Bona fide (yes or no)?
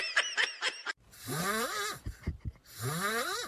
yes